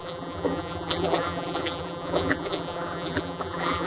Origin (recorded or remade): remade